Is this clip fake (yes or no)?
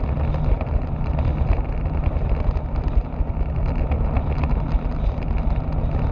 no